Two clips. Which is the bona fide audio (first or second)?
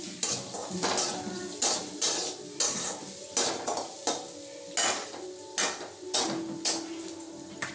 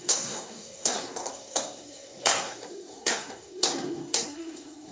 first